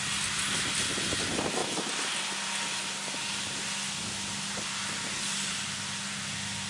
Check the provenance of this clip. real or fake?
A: real